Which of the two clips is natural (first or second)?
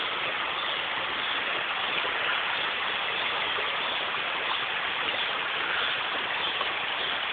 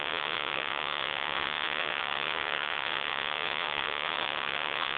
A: first